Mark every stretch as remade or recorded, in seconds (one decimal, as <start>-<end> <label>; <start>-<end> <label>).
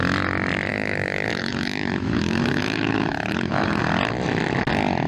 0.0-0.7 recorded; 0.7-3.8 remade; 3.8-5.1 recorded